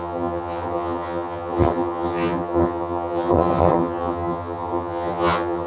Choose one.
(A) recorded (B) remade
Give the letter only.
B